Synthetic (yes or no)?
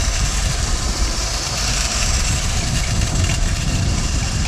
yes